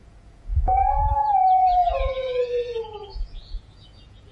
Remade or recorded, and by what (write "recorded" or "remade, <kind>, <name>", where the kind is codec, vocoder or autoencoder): remade, vocoder, Vocos